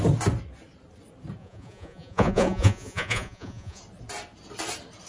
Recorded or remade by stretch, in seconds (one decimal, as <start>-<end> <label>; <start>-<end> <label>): 0.0-1.4 recorded; 1.4-3.8 remade; 3.8-5.1 recorded